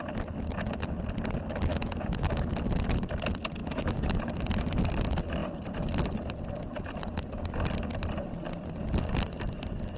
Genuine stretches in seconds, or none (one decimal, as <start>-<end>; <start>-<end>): 0.0-1.7; 2.5-3.6; 4.2-10.0